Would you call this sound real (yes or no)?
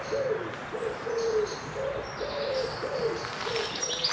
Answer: yes